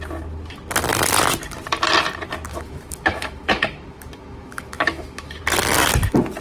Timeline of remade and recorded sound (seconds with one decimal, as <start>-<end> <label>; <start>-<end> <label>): 0.0-2.5 recorded; 2.5-5.4 remade; 5.4-6.4 recorded